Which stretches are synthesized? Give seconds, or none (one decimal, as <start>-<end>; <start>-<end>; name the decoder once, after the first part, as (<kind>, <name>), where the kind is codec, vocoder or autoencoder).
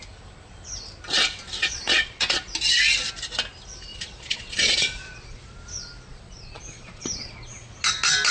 1.6-2.4 (vocoder, Vocos); 3.9-5.4; 6.1-7.7